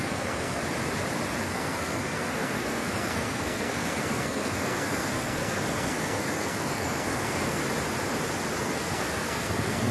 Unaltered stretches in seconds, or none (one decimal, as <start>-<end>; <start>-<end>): 0.6-1.4; 7.6-8.6